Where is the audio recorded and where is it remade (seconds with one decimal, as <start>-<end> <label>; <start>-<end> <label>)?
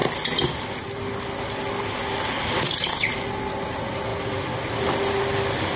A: 0.0-4.1 recorded; 4.1-4.7 remade; 4.7-5.8 recorded